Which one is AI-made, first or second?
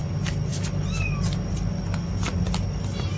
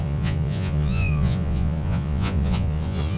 second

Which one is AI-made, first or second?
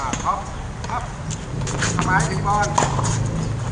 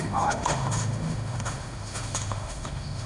second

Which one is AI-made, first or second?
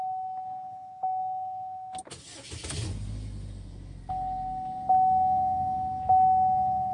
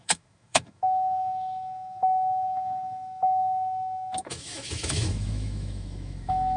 second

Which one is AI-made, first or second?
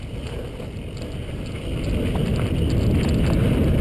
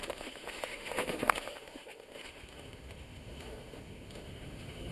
second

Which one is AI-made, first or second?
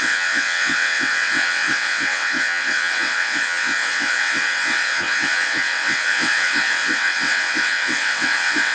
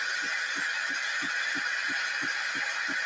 first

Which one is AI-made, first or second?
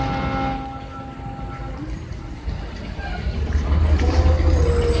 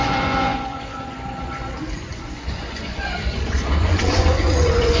second